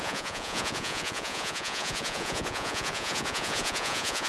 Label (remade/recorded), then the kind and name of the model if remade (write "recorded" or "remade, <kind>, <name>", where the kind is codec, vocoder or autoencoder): remade, vocoder, Vocos